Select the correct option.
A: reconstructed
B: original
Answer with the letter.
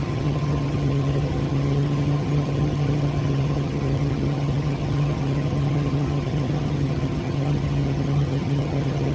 A